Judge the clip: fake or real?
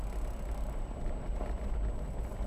real